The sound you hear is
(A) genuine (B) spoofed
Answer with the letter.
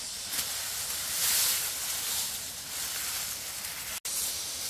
A